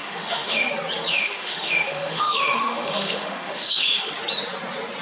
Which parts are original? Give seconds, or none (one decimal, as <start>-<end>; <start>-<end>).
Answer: 0.7-1.1; 4.1-5.0